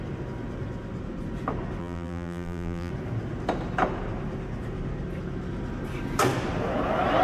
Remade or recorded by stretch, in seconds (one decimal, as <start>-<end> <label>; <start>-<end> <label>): 0.0-1.8 recorded; 1.8-2.9 remade; 2.9-7.2 recorded